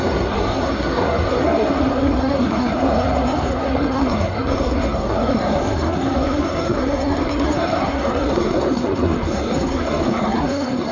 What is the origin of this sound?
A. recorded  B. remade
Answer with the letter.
B